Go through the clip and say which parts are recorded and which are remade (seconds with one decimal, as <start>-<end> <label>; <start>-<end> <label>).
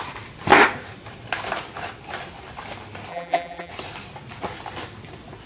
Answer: 0.0-3.1 recorded; 3.1-3.7 remade; 3.7-5.5 recorded